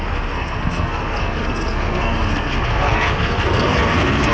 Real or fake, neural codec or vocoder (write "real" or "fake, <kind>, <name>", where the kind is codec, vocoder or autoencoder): fake, codec, SNAC